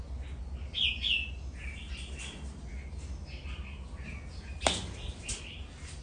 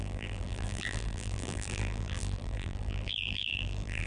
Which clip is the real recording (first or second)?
first